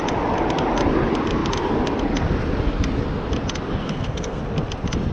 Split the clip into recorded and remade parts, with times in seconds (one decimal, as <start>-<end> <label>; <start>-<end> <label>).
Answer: 0.0-3.8 recorded; 3.8-4.4 remade; 4.4-5.1 recorded